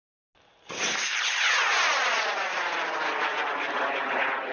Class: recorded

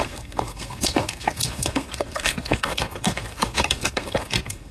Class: remade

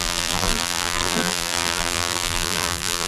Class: remade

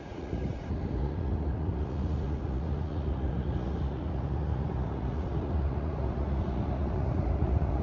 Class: remade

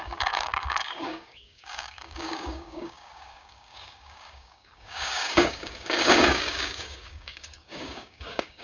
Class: remade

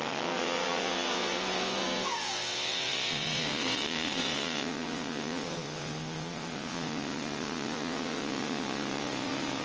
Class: remade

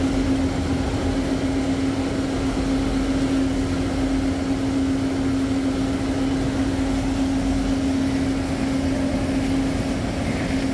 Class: recorded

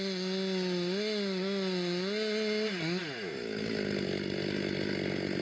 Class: recorded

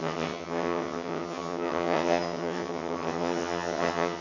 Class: remade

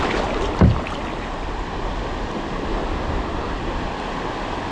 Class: recorded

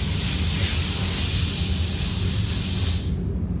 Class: recorded